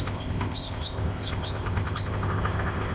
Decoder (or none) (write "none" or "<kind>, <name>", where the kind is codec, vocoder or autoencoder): codec, ZipCodec